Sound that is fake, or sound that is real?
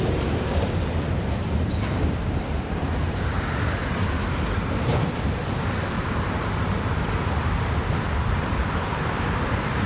fake